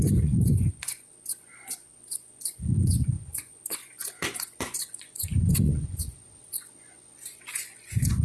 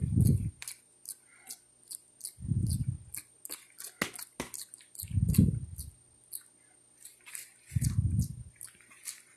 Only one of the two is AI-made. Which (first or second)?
first